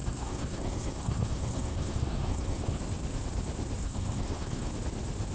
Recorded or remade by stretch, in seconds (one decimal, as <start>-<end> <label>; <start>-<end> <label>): 0.0-2.8 remade; 2.8-3.8 recorded; 3.8-4.7 remade; 4.7-5.3 recorded